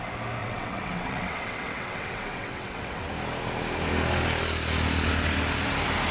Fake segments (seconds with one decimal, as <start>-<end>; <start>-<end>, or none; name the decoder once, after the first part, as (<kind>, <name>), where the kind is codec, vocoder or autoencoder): 0.4-3.1 (vocoder, WaveNeXt)